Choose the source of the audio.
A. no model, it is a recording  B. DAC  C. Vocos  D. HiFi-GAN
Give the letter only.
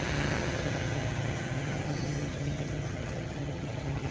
D